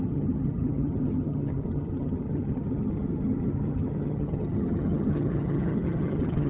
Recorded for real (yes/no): no